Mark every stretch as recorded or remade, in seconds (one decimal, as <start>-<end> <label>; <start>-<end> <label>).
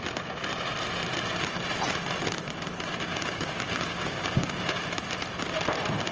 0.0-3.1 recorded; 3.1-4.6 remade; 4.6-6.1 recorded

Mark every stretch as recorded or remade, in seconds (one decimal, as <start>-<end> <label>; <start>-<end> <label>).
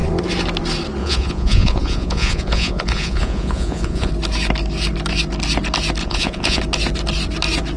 0.0-1.0 recorded; 1.0-4.1 remade; 4.1-6.0 recorded; 6.0-6.6 remade; 6.6-7.8 recorded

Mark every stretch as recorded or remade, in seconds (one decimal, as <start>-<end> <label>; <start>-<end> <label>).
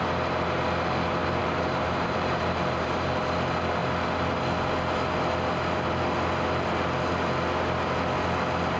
0.0-1.4 recorded; 1.4-3.1 remade; 3.1-8.8 recorded